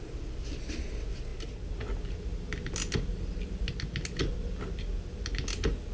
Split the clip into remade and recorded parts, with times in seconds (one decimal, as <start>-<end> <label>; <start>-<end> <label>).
0.0-5.9 recorded